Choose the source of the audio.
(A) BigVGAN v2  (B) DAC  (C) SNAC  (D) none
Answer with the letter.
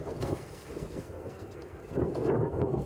C